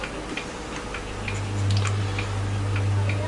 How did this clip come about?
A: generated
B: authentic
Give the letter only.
B